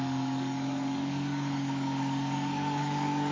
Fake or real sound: fake